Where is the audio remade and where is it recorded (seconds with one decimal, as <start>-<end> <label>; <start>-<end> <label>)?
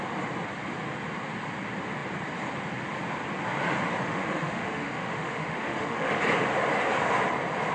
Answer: 0.0-4.1 recorded; 4.1-6.2 remade; 6.2-7.7 recorded